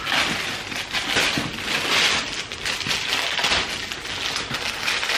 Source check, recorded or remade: recorded